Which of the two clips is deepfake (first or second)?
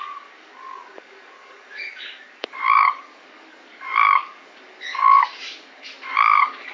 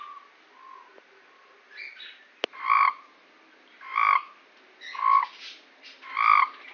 first